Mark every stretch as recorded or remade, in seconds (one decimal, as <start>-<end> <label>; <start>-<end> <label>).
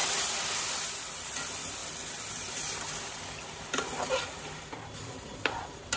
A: 0.0-1.8 remade; 1.8-5.0 recorded; 5.0-6.0 remade